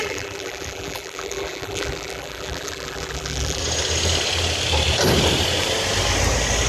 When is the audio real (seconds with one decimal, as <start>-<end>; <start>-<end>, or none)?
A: 3.6-6.7